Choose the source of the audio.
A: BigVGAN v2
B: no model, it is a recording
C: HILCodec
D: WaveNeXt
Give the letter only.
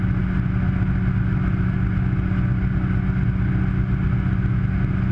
B